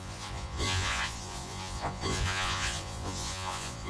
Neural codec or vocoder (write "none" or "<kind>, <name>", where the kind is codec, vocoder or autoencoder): vocoder, Vocos